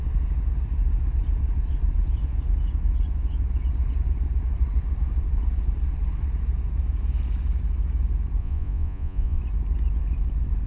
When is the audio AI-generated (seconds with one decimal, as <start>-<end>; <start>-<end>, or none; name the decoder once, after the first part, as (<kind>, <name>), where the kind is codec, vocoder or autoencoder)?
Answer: 8.4-9.4 (vocoder, Vocos)

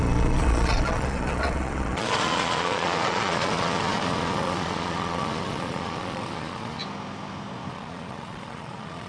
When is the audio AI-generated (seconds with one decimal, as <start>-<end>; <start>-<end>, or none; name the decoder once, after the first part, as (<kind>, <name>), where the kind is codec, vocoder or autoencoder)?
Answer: 0.0-6.8 (vocoder, Vocos); 7.7-9.1

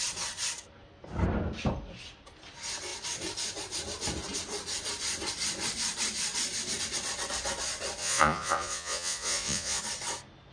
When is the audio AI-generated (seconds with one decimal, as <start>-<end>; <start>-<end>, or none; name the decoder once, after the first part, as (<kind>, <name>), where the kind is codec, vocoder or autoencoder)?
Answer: 8.0-9.8 (vocoder, Vocos)

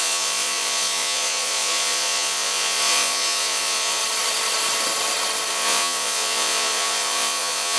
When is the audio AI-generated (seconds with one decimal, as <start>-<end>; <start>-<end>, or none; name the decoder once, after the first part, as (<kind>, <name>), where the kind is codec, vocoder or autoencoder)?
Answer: 0.0-4.0 (vocoder, Vocos); 5.5-7.8

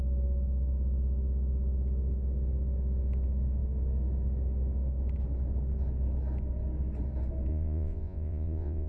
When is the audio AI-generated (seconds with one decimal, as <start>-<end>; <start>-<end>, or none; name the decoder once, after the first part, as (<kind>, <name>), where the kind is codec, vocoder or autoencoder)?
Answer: 7.5-8.9 (vocoder, Vocos)

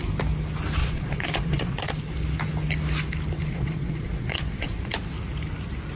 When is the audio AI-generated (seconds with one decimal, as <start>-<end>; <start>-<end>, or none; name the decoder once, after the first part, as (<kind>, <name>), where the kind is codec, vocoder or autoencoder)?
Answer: 0.8-1.9 (vocoder, Vocos); 3.4-4.9